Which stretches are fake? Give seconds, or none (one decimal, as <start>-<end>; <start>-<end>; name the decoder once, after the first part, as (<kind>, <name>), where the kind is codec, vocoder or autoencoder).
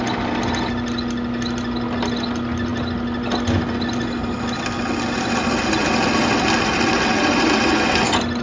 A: none